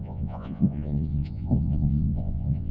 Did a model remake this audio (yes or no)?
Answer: yes